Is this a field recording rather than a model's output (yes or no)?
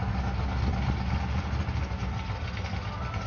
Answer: yes